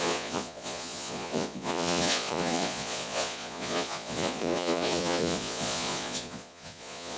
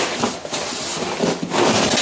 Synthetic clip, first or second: first